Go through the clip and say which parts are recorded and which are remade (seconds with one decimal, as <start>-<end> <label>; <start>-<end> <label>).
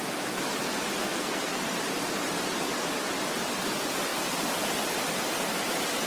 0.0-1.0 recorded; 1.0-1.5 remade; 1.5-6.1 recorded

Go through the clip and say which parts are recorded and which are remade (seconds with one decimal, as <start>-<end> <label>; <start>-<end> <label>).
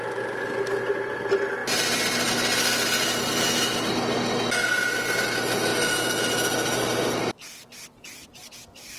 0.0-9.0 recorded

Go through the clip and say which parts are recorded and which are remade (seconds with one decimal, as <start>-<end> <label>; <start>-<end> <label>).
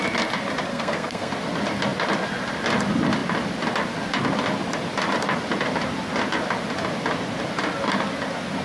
0.0-0.7 recorded; 0.7-1.3 remade; 1.3-8.6 recorded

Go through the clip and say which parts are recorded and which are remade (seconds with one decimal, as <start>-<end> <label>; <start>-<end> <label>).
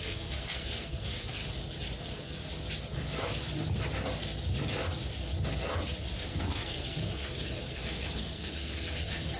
0.0-1.4 remade; 1.4-2.0 recorded; 2.0-2.5 remade; 2.5-6.2 recorded; 6.2-9.4 remade